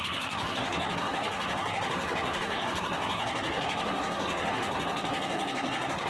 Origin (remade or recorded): remade